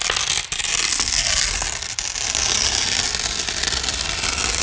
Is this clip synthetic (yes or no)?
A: no